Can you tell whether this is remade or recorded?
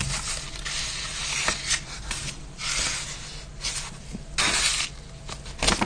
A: recorded